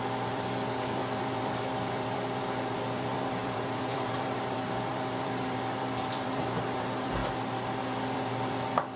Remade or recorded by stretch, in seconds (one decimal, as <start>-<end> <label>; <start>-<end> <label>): 0.0-7.2 remade; 7.2-7.8 recorded; 7.8-9.0 remade